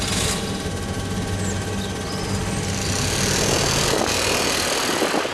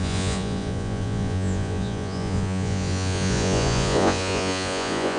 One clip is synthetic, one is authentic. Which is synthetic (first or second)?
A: second